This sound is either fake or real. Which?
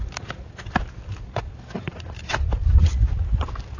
real